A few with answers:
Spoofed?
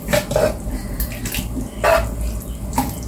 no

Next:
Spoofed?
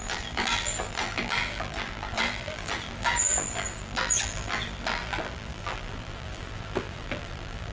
yes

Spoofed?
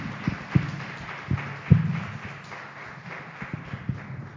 no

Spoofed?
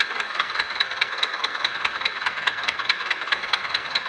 yes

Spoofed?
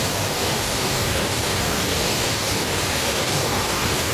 yes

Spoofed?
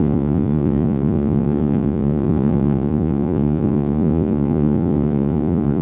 yes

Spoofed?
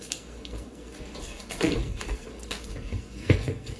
yes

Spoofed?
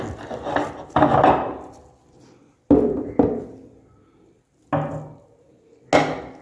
no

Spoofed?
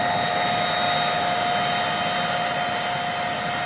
no